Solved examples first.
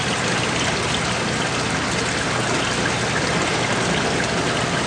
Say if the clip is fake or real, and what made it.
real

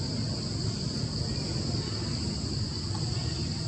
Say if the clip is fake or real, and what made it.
real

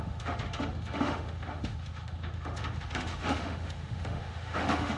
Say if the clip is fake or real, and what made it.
fake, autoencoder, DAC-VAE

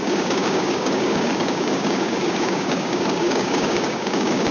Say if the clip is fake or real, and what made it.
fake, codec, DAC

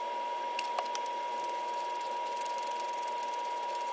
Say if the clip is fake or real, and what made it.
real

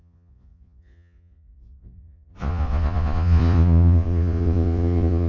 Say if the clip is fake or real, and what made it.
fake, vocoder, Vocos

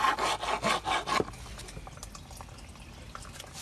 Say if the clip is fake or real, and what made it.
real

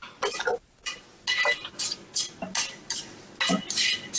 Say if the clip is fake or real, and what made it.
real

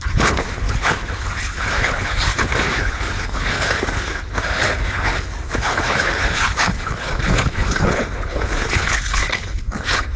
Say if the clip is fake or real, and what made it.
fake, codec, HILCodec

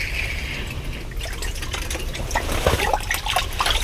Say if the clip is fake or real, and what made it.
real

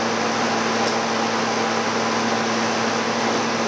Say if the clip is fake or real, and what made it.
real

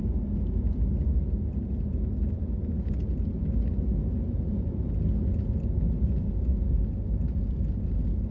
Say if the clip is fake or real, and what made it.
real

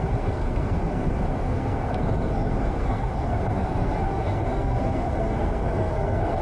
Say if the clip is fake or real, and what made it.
fake, codec, SNAC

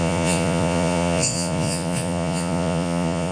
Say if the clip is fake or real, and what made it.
fake, vocoder, Vocos